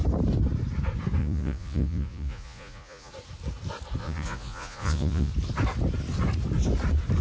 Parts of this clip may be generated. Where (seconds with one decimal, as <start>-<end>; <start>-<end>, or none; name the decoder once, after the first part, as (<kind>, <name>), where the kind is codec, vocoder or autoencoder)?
1.2-3.1 (vocoder, Vocos); 4.0-5.3

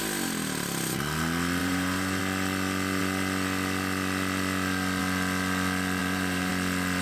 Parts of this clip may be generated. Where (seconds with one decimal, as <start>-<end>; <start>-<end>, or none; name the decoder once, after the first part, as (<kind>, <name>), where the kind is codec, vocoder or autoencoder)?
1.6-2.2 (vocoder, BigVGAN v2); 6.0-6.5

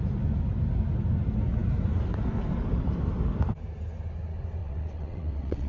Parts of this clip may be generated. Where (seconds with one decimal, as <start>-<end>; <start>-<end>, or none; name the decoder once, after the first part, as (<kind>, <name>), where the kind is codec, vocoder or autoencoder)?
4.6-5.7 (vocoder, WaveNeXt)